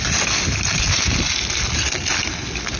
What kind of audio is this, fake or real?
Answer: real